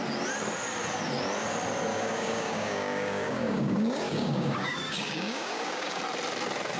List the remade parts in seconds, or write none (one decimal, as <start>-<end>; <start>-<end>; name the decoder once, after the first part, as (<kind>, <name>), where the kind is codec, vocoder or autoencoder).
1.9-6.0 (codec, DAC)